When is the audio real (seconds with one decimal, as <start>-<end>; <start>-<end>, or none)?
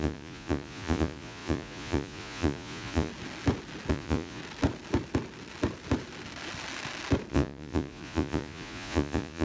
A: 3.1-3.9; 4.4-7.3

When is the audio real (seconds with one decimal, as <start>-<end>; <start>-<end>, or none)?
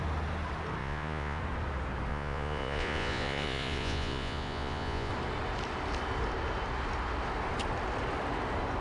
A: 0.0-0.8; 1.4-2.1; 5.1-8.8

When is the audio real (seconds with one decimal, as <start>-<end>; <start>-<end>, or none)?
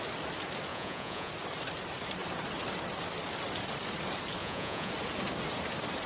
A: 0.0-0.7; 1.3-4.4; 4.9-6.1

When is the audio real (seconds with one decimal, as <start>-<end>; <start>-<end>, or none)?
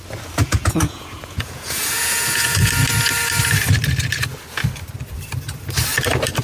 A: 0.0-0.4; 2.7-6.4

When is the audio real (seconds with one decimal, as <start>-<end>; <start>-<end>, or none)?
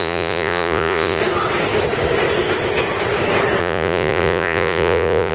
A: 1.2-3.6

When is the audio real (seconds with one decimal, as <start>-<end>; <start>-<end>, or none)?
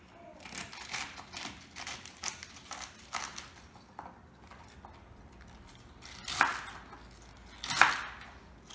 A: 0.0-8.7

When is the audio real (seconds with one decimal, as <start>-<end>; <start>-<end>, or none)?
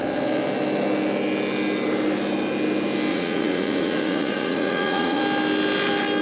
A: 0.0-3.1; 5.2-6.2